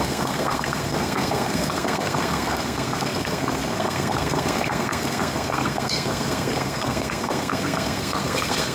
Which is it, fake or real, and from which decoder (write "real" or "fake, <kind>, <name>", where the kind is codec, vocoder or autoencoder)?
fake, codec, SNAC